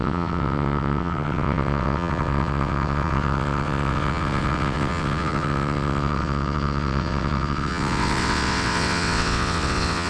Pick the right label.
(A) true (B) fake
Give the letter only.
B